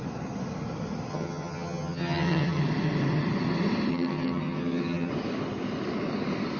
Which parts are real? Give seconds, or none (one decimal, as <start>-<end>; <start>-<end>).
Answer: 0.0-1.1; 2.6-3.9; 5.1-6.6